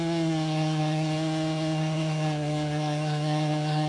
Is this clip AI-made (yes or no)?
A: yes